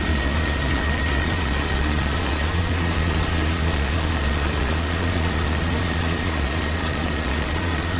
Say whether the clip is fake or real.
fake